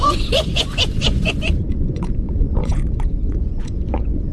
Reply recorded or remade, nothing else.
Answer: remade